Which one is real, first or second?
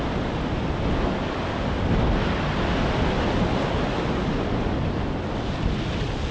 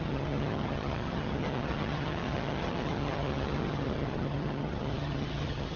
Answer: first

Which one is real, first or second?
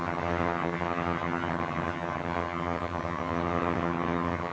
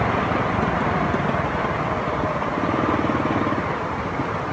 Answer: second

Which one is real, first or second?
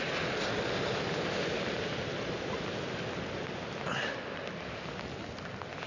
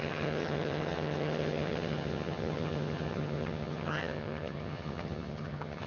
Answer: first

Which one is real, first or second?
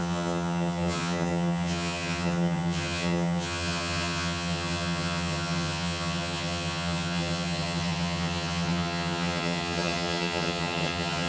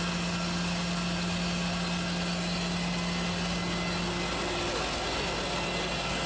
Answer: second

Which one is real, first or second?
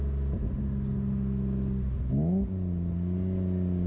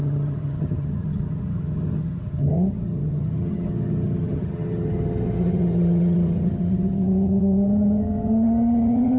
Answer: first